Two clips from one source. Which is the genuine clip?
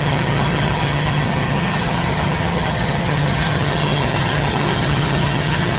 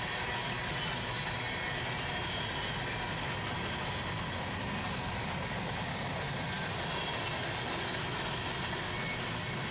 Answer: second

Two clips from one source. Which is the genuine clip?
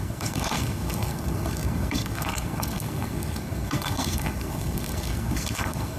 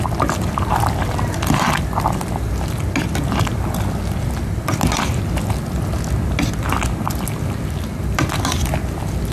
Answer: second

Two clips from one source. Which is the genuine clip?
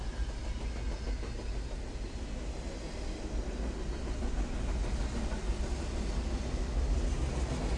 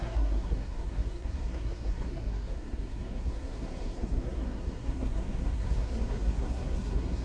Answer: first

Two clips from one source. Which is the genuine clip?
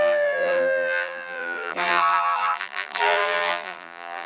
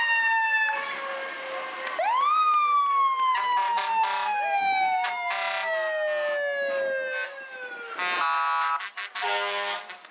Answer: second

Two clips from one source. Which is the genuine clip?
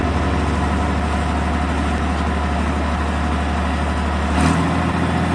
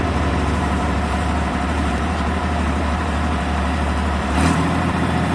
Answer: first